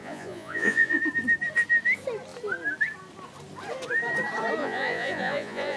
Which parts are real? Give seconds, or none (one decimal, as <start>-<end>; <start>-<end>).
1.0-4.6